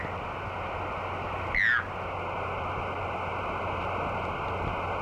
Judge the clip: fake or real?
real